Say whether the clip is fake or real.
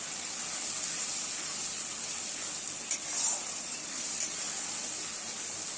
real